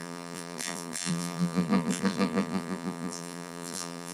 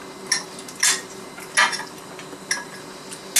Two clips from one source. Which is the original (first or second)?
second